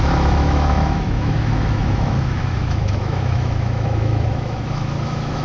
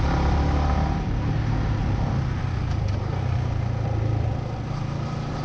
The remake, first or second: first